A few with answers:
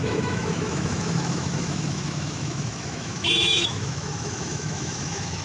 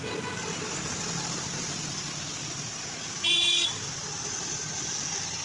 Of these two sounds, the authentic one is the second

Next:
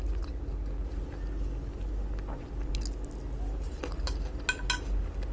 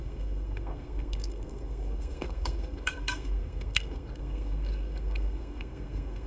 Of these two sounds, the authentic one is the first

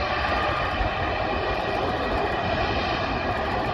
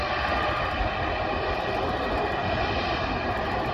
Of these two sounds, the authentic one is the second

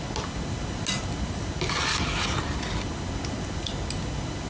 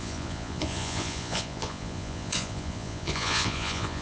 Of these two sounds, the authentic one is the first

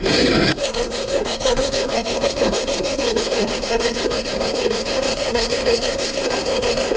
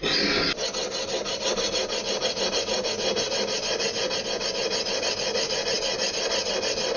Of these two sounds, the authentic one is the second